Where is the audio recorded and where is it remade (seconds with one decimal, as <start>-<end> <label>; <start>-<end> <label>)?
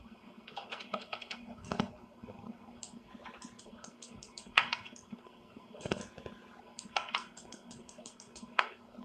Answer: 0.0-3.1 remade; 3.1-3.6 recorded; 3.6-6.0 remade; 6.0-6.6 recorded; 6.6-9.0 remade